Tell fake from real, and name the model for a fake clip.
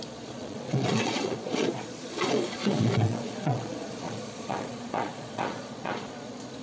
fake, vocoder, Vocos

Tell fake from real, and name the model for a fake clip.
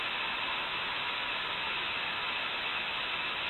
real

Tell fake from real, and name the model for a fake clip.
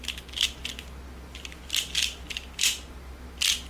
real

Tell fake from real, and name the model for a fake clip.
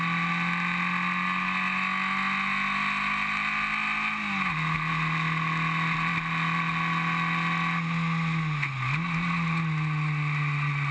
real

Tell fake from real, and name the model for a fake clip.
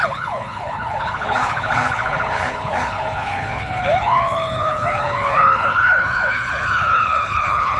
fake, codec, HILCodec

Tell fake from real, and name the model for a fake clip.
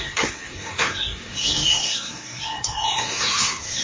fake, codec, SNAC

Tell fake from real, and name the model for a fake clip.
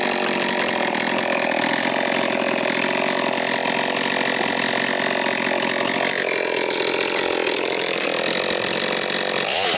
real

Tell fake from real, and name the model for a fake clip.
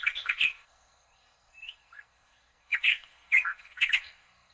fake, codec, SNAC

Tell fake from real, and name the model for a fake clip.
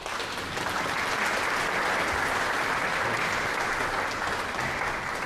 real